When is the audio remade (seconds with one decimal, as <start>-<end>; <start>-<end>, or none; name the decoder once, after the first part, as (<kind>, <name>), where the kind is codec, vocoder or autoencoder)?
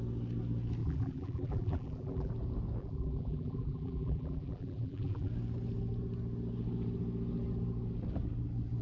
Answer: 0.8-2.3 (vocoder, BigVGAN v2); 2.8-5.3